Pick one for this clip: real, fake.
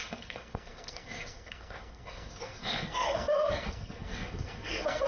fake